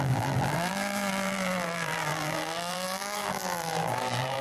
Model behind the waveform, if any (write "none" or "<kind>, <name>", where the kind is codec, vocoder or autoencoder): vocoder, BigVGAN v2